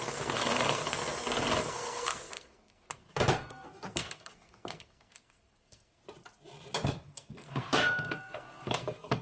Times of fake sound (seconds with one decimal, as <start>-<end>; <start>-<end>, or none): 0.0-1.0; 1.6-6.0; 6.9-9.2